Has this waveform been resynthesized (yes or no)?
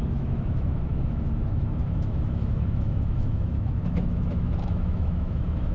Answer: yes